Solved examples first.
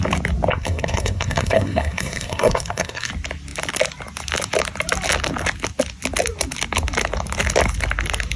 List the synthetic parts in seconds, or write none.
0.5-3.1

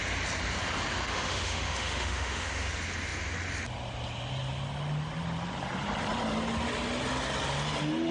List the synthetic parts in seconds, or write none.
1.1-2.7

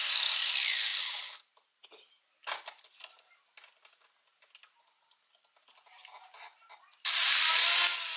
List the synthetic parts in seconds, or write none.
none